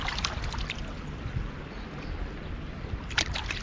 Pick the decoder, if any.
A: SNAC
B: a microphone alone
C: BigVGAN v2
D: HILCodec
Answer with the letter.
B